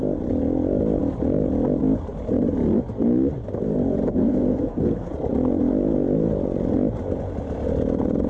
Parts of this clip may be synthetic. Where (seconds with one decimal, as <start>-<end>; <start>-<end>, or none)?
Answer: 4.2-5.1